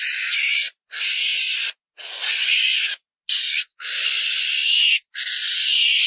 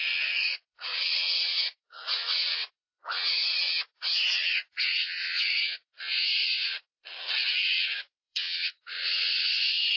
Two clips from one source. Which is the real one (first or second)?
first